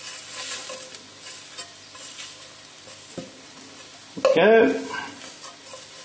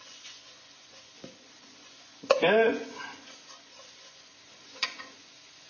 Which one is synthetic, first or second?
second